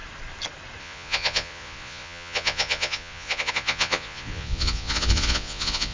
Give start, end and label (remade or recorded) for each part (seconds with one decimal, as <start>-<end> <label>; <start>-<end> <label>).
0.0-0.8 recorded; 0.8-5.9 remade